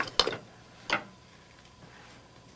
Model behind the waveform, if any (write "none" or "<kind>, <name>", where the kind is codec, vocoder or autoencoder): none